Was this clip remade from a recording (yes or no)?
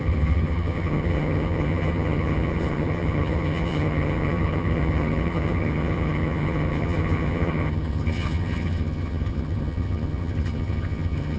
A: yes